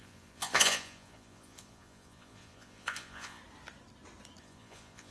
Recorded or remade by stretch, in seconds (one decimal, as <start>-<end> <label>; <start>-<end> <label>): 0.0-3.4 remade; 3.4-4.4 recorded; 4.4-5.1 remade